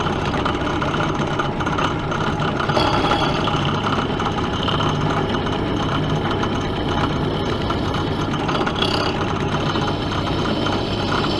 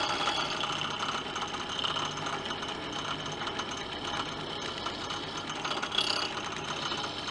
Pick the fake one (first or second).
first